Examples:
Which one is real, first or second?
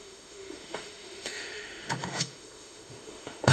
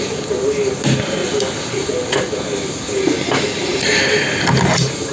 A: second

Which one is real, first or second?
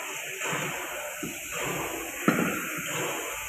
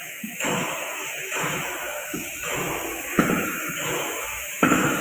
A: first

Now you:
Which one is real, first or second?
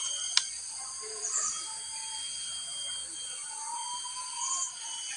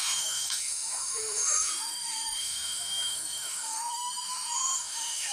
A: first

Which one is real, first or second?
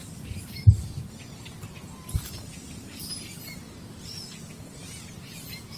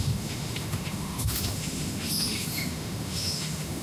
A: first